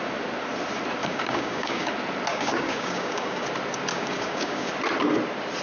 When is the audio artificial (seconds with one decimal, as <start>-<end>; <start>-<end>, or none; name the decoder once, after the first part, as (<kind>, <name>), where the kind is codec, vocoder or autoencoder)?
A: 1.0-1.9 (codec, DAC); 2.3-3.5; 3.9-4.7